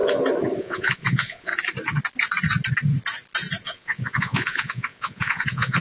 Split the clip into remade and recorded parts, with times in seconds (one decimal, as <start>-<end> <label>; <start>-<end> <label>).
0.0-0.6 recorded; 0.6-1.5 remade; 1.5-3.6 recorded; 3.6-5.8 remade